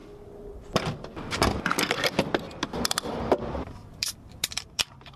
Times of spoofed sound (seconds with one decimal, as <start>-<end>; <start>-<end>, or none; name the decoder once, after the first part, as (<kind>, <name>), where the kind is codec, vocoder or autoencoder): 3.1-5.2 (vocoder, BigVGAN v2)